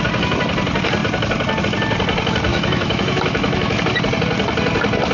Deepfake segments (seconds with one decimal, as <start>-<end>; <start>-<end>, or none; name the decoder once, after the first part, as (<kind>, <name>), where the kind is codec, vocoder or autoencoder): 2.5-3.8 (autoencoder, DAC-VAE)